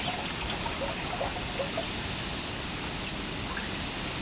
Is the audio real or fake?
real